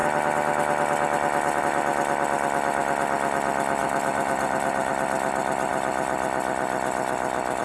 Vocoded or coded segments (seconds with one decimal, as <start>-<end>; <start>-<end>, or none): 3.8-4.9